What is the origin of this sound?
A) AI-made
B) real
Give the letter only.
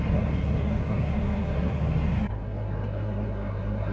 A